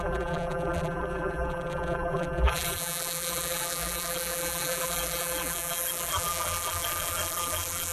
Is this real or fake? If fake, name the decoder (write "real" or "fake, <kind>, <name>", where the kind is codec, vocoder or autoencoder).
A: fake, vocoder, BigVGAN v2